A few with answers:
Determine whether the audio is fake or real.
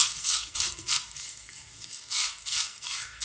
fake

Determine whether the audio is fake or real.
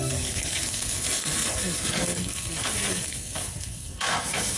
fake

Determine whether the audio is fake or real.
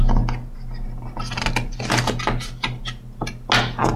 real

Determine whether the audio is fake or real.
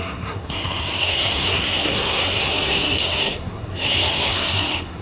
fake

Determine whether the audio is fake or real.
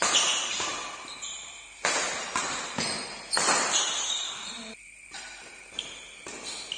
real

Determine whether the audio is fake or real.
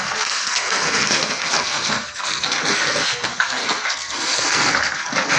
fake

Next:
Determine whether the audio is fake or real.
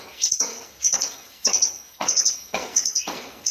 fake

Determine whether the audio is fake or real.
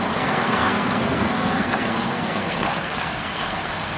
fake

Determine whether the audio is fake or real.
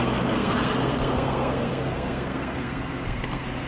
fake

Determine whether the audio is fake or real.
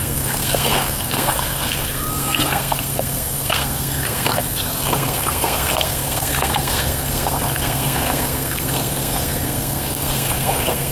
fake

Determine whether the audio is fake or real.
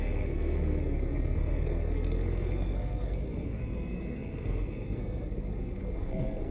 fake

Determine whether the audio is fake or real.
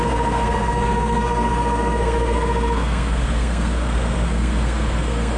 fake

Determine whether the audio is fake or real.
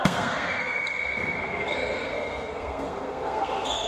fake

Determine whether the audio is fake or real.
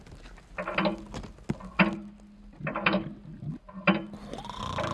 real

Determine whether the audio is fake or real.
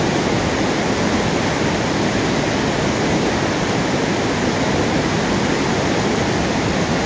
real